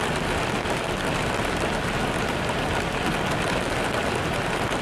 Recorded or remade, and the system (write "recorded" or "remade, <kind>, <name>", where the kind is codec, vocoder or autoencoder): recorded